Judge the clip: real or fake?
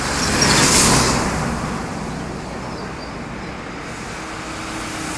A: real